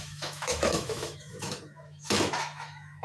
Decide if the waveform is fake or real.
fake